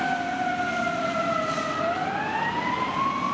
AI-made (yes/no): no